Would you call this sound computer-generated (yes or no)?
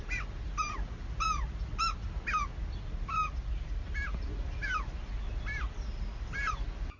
no